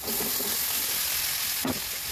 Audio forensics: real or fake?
real